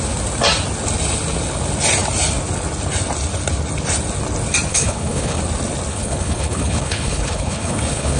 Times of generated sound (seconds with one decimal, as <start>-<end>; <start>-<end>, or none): 4.7-5.4; 5.9-8.2